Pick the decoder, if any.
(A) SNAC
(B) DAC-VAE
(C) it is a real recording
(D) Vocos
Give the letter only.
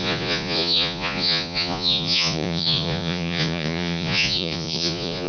D